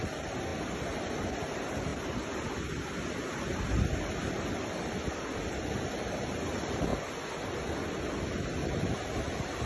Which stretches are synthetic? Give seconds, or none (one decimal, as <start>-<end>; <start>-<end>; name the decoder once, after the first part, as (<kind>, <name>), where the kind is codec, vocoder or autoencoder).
none